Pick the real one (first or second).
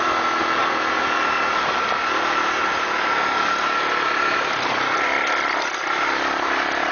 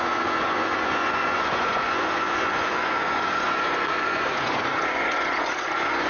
first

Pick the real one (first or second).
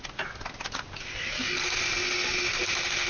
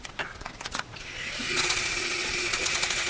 first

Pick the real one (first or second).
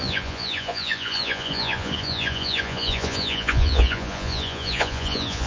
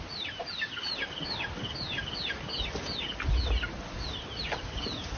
second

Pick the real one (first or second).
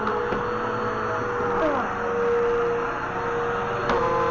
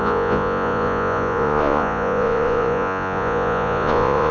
first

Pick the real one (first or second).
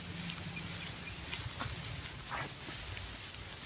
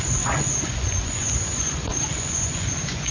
first